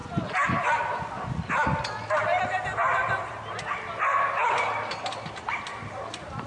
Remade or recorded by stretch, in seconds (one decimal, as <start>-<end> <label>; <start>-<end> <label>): 0.0-2.9 recorded; 2.9-3.8 remade; 3.8-5.7 recorded; 5.7-6.5 remade